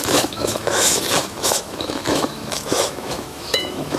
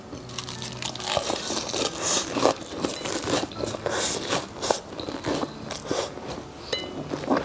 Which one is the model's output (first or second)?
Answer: first